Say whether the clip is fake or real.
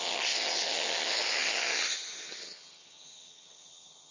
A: fake